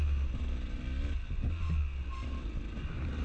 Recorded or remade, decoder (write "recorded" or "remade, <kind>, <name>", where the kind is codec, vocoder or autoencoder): recorded